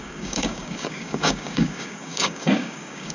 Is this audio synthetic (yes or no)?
yes